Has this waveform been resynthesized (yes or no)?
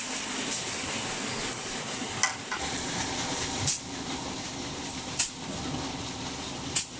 no